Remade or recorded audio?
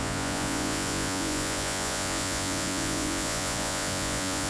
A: remade